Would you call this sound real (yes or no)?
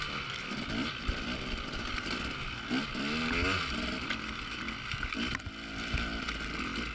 yes